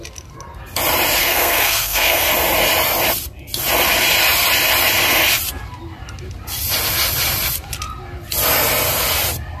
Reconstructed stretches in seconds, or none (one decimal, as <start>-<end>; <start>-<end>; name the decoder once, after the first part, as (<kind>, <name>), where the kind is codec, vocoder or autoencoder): 1.2-2.3 (codec, SNAC)